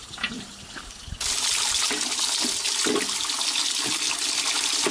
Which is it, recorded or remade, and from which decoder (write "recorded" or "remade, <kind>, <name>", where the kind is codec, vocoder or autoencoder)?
recorded